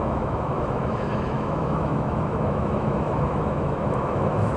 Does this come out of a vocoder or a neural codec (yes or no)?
yes